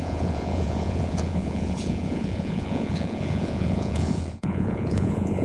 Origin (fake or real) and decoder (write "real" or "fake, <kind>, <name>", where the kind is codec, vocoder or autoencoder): fake, vocoder, Vocos